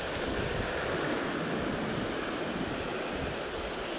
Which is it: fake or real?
real